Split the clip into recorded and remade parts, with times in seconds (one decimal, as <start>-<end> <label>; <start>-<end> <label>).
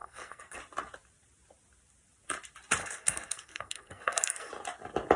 0.0-0.6 remade; 0.6-2.8 recorded; 2.8-4.5 remade; 4.5-5.2 recorded